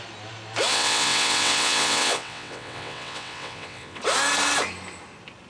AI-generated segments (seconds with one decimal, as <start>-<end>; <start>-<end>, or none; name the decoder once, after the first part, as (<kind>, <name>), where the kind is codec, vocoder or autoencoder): 0.7-4.0 (vocoder, WaveNeXt)